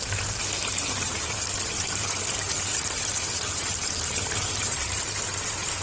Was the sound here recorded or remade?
remade